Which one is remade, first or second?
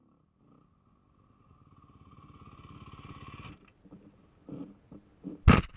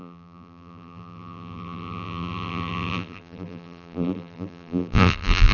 second